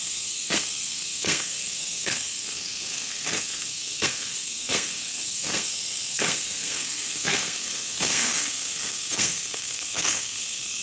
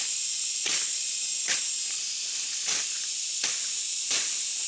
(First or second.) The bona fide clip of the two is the second